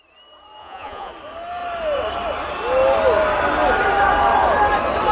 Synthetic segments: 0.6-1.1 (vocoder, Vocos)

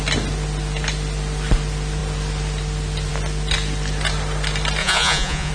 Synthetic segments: 4.8-5.5 (vocoder, Vocos)